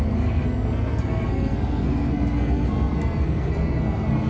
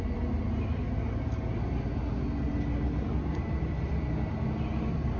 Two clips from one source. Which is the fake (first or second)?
first